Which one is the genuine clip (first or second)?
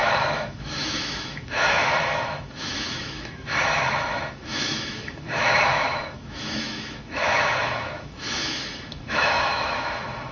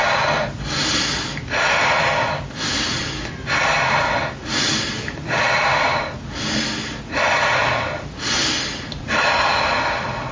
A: second